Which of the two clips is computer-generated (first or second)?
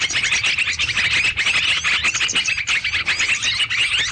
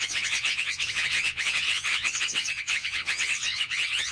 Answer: second